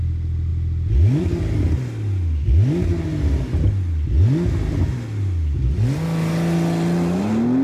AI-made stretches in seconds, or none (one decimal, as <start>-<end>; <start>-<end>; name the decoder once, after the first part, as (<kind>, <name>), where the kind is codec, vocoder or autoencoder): none